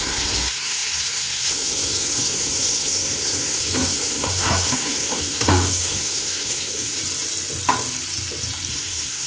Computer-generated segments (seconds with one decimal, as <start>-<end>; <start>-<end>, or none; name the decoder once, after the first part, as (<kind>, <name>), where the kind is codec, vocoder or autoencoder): 0.0-7.0 (codec, SNAC); 8.7-9.3